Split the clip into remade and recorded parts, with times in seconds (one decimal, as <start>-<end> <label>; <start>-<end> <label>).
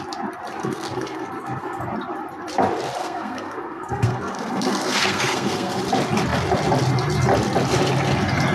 0.0-0.6 recorded; 0.6-1.8 remade; 1.8-3.0 recorded; 3.0-5.8 remade; 5.8-8.5 recorded